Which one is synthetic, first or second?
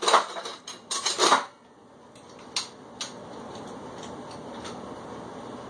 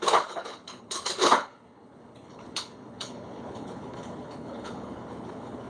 second